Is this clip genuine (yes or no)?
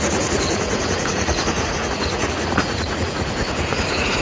no